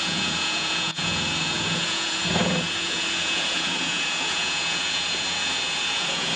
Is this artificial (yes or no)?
yes